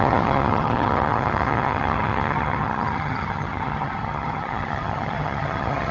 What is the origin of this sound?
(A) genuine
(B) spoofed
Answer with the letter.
B